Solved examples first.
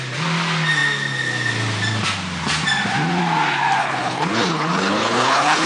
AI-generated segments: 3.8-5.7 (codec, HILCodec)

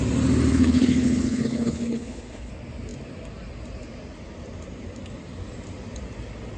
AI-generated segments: 0.5-2.5 (codec, HILCodec)

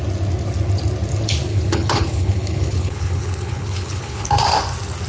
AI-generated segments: 1.5-4.3 (codec, HILCodec)

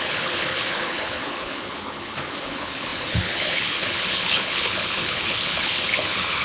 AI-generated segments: 0.0-6.4 (codec, HILCodec)

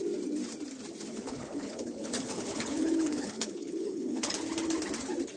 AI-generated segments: 1.1-4.3 (codec, HILCodec)

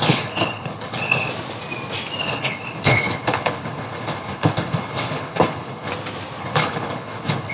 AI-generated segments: 0.0-1.3 (codec, HILCodec); 2.2-5.9; 6.4-7.5

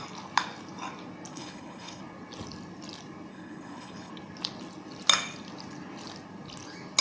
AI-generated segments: 1.3-2.0 (codec, HILCodec); 3.3-4.1

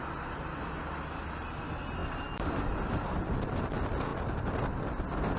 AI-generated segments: none